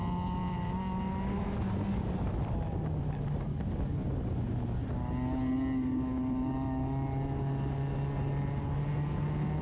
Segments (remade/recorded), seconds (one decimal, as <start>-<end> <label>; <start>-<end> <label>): 0.0-9.6 recorded